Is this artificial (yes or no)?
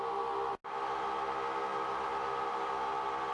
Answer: no